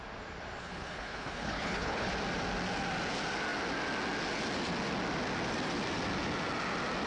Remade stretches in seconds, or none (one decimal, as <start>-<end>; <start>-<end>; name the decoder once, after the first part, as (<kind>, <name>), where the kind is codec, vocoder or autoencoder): 0.6-2.1 (codec, HILCodec)